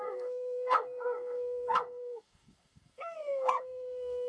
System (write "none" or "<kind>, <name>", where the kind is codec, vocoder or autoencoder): codec, SNAC